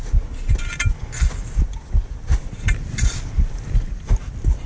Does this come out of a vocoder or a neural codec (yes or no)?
no